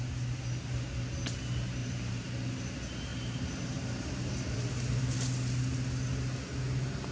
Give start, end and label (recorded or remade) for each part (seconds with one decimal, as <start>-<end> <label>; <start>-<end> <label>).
0.0-1.8 recorded; 1.8-2.3 remade; 2.3-3.1 recorded; 3.1-5.0 remade; 5.0-7.1 recorded